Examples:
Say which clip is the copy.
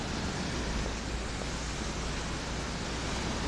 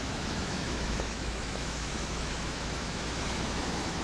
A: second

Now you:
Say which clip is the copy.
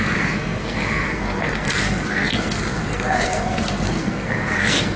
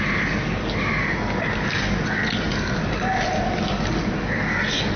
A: first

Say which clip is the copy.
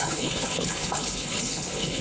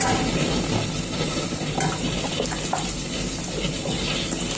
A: first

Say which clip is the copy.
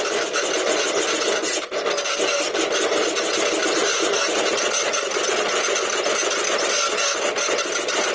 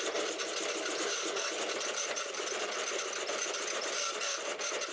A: second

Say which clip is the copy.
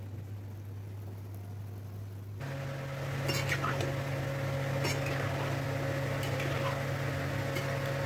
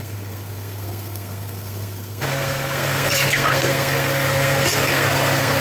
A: second